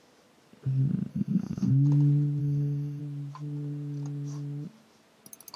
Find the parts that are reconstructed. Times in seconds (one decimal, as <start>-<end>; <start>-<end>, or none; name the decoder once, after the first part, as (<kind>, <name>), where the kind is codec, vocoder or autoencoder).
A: 1.1-1.7 (codec, SNAC); 2.4-3.0